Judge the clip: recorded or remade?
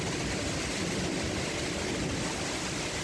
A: recorded